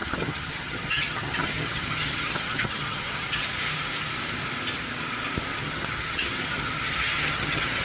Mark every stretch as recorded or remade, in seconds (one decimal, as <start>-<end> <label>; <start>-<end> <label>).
0.0-3.4 remade; 3.4-5.5 recorded; 5.5-7.8 remade